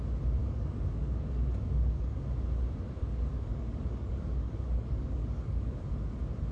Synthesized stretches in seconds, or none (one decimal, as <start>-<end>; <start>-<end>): 0.4-2.2; 3.0-5.8